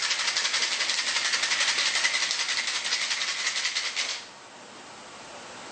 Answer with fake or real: real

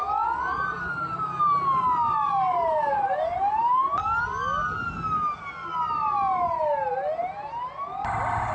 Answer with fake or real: real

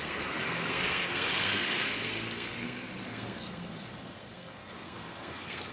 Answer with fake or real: fake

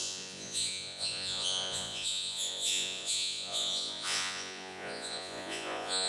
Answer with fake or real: fake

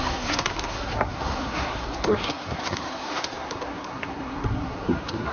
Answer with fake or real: fake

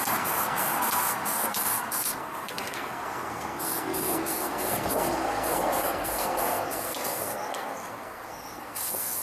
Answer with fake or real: fake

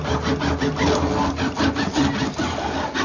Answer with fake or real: real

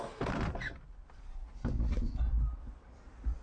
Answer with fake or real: real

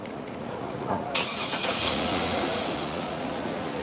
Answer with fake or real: fake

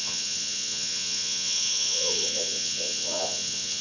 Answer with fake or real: fake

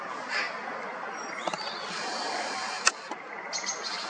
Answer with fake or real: real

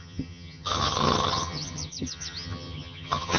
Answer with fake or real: fake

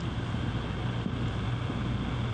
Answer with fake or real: real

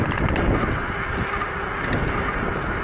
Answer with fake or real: real